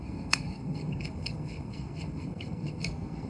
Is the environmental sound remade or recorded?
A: remade